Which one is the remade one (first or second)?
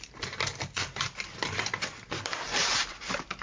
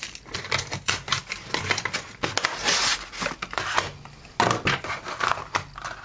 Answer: first